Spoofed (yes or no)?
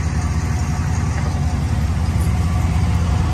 no